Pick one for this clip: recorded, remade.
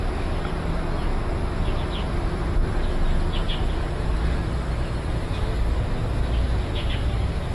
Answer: recorded